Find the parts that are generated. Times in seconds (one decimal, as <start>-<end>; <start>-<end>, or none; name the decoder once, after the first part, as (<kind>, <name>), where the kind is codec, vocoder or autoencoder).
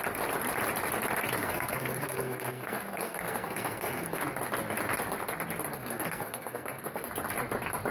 1.4-4.2 (codec, SNAC); 5.7-7.1